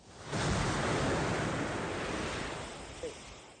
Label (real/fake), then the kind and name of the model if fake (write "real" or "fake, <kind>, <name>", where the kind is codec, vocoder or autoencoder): real